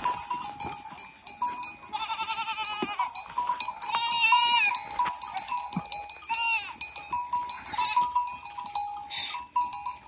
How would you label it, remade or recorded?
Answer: recorded